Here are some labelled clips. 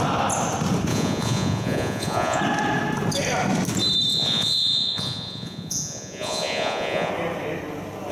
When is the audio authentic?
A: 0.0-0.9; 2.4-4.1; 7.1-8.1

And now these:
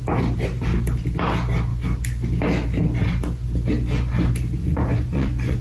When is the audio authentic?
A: 0.0-4.6

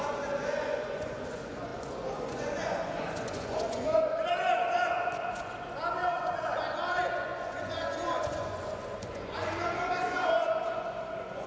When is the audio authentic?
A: none

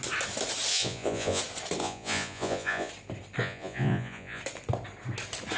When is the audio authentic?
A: 0.0-0.7; 1.4-1.8; 2.9-3.4; 4.4-5.6

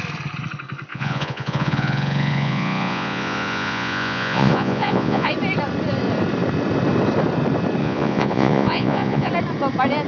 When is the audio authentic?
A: 0.0-0.9; 5.3-7.8; 9.3-10.1

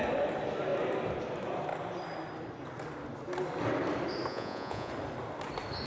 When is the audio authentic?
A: 0.0-4.3; 4.9-5.9